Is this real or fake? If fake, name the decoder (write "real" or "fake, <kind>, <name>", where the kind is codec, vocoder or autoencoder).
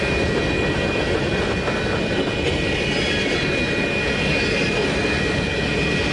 real